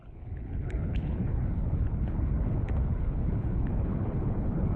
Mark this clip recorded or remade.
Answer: remade